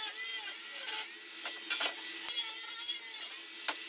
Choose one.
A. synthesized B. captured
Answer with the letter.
B